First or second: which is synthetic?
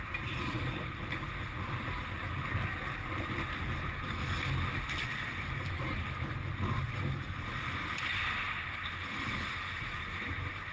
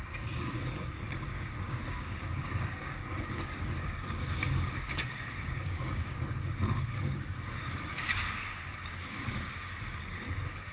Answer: second